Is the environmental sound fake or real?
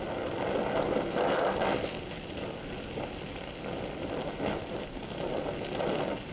real